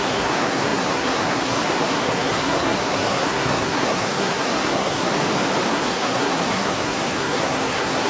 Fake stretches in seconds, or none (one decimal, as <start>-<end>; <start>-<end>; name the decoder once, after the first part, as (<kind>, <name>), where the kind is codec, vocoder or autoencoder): 0.0-5.1 (codec, SNAC); 5.7-8.1

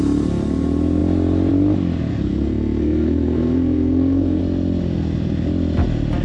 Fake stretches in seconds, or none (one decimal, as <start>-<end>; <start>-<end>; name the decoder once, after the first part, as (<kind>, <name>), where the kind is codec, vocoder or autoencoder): 2.1-4.4 (codec, SNAC)

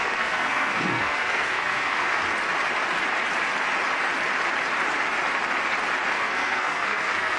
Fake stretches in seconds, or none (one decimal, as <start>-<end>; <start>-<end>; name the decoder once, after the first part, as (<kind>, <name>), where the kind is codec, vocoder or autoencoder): 0.0-2.2 (codec, SNAC); 6.1-7.4